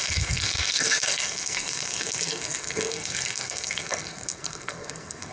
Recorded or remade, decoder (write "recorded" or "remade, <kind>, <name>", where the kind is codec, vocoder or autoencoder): remade, codec, SNAC